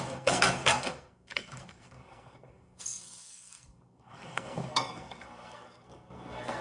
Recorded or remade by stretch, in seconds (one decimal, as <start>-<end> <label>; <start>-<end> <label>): 0.0-6.6 remade